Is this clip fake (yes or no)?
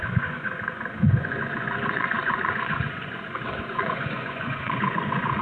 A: yes